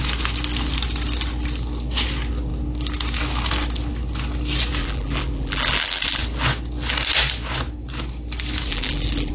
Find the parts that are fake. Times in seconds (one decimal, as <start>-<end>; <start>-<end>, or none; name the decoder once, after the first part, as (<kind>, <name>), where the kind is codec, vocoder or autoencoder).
4.8-6.2 (vocoder, BigVGAN v2); 8.7-9.3